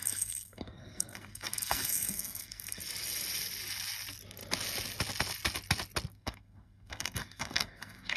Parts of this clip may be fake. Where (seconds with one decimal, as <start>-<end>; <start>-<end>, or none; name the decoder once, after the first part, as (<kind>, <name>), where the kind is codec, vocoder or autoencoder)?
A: 0.0-2.8 (codec, SNAC); 6.1-8.2